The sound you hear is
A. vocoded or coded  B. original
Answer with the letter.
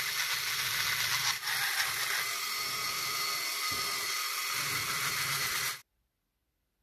A